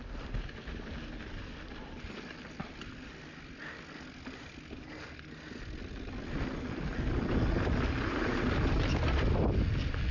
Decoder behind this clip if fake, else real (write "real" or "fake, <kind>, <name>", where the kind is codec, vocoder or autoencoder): real